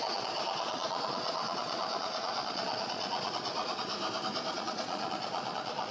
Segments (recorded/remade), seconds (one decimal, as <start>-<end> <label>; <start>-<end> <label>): 0.0-3.9 remade; 3.9-4.5 recorded; 4.5-5.9 remade